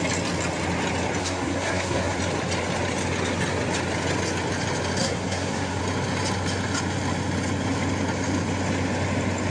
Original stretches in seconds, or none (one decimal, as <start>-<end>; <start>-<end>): 0.0-1.2; 2.2-5.0; 5.8-9.5